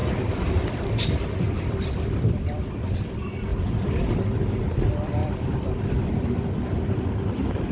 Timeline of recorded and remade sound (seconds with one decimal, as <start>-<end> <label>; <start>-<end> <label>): 0.0-3.0 remade; 3.0-3.5 recorded; 3.5-4.4 remade; 4.4-5.2 recorded; 5.2-6.8 remade; 6.8-7.7 recorded